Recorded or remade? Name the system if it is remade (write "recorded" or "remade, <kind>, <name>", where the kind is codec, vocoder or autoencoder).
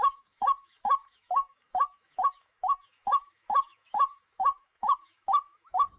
remade, autoencoder, DAC-VAE